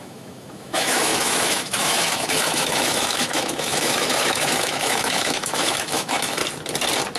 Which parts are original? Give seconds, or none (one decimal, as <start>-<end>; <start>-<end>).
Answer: 6.4-7.2